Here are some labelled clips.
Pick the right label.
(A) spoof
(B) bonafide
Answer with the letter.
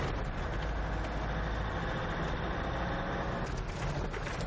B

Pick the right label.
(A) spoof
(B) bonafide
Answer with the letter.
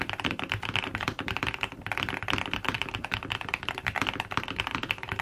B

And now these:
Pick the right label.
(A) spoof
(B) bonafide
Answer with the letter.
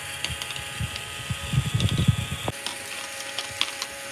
B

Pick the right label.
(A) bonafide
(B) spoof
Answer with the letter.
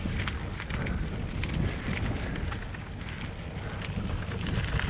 A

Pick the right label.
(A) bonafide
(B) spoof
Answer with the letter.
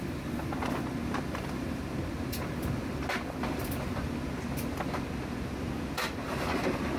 A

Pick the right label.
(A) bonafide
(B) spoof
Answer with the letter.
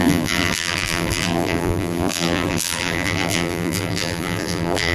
B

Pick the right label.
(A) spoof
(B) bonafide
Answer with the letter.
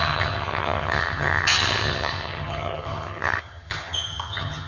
A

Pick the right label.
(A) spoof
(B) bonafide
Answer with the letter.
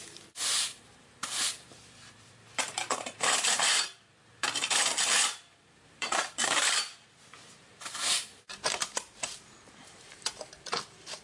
A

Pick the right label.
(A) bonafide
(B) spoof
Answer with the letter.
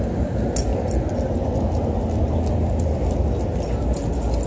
A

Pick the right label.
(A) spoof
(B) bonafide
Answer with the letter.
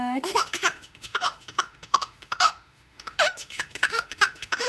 A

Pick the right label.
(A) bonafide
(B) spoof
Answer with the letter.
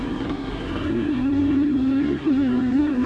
B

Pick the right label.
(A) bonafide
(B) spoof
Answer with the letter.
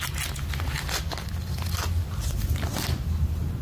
A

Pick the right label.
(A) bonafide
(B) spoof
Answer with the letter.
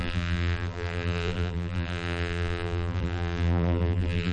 B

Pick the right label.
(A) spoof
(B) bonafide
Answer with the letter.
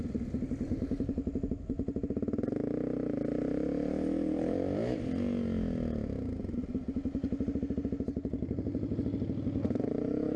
B